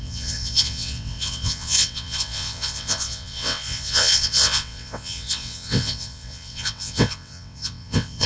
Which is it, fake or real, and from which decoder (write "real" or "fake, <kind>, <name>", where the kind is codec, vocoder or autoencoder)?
fake, vocoder, WaveNeXt